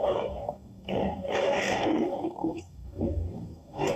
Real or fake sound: fake